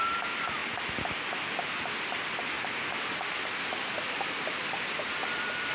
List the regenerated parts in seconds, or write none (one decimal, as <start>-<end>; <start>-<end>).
0.0-0.6; 4.0-5.7